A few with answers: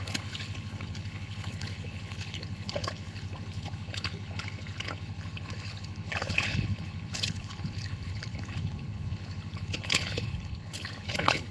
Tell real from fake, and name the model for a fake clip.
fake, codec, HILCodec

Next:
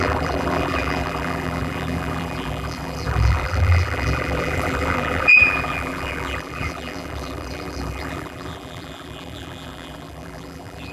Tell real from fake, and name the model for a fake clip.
fake, vocoder, BigVGAN v2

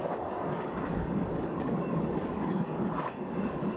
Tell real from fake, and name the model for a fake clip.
fake, codec, DAC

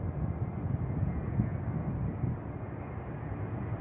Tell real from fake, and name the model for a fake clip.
real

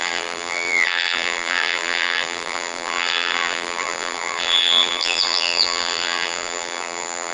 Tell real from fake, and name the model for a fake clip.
fake, vocoder, BigVGAN v2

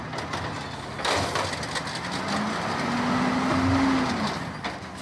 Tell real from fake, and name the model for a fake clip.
real